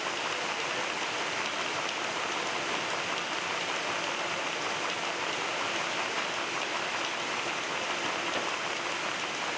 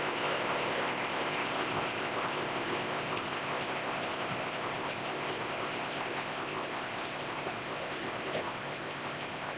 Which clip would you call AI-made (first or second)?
second